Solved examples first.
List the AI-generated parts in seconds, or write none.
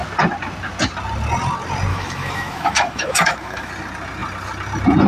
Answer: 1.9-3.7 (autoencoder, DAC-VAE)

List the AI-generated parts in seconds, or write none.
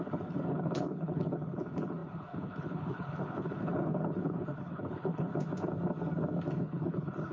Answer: 0.0-5.3 (codec, HILCodec); 6.5-7.3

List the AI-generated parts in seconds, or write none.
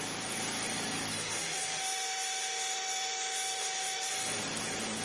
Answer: 1.1-4.1 (autoencoder, DAC-VAE)